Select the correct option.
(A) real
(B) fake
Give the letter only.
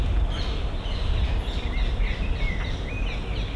A